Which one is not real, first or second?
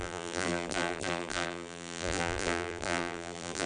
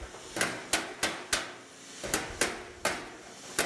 first